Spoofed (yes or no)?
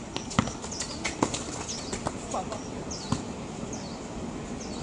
no